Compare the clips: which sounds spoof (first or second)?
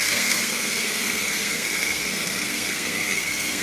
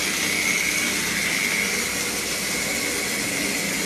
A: first